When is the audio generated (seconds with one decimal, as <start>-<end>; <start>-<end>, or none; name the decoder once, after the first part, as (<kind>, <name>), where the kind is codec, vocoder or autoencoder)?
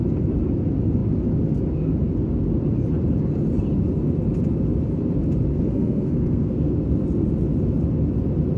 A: 5.5-6.7 (codec, SNAC)